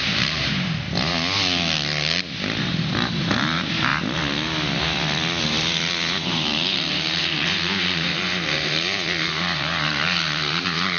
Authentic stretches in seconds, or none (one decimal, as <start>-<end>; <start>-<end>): 1.1-2.6; 3.9-5.4